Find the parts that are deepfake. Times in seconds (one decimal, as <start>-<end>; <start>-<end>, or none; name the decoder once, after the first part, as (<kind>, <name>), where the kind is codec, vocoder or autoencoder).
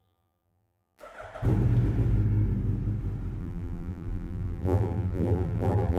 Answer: 0.0-1.0 (vocoder, BigVGAN v2); 3.4-6.0